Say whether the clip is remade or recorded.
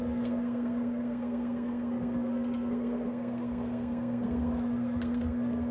remade